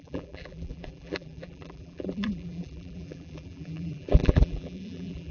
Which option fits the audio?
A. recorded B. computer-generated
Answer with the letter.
B